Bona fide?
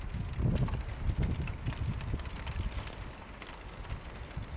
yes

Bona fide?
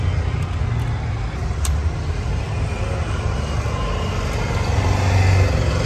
yes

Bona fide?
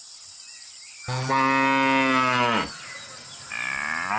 yes